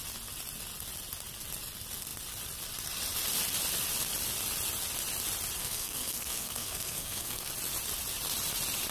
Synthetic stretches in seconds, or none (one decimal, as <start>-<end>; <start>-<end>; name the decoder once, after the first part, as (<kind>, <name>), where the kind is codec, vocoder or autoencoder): 5.6-7.5 (codec, SNAC)